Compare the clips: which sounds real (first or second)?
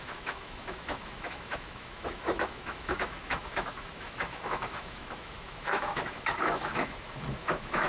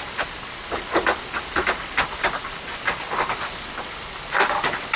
second